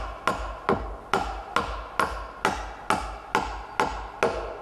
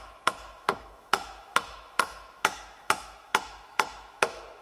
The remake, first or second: second